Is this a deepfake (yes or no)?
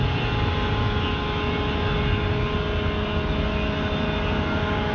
no